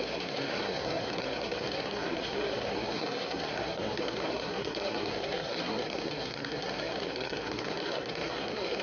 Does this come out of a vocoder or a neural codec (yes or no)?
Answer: yes